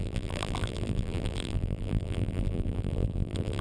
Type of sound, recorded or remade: remade